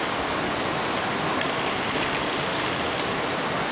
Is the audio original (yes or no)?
yes